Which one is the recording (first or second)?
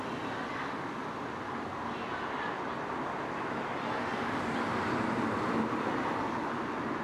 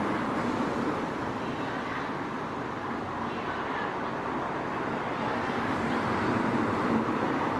first